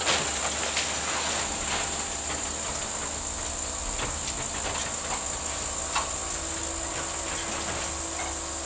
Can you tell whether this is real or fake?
real